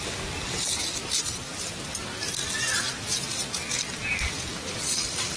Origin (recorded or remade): recorded